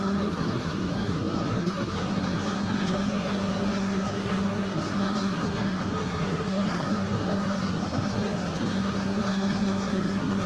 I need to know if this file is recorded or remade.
remade